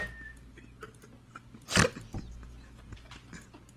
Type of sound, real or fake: real